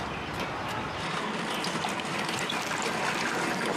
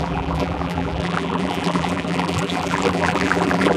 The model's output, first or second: second